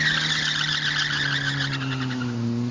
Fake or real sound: real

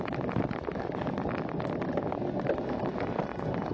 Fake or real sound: real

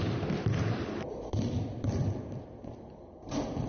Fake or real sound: real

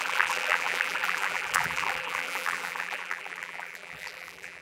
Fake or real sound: fake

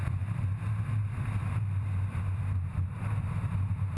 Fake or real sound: fake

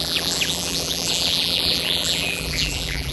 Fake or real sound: fake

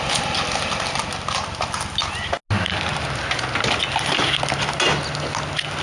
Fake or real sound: real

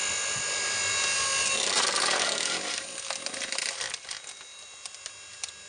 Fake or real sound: real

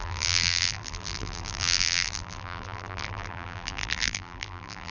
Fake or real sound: fake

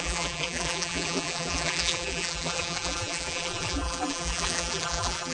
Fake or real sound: fake